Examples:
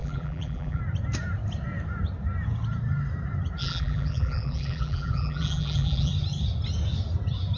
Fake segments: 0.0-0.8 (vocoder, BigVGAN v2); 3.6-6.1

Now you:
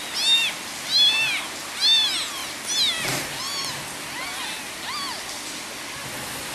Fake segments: none